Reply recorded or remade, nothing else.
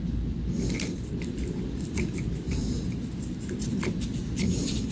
recorded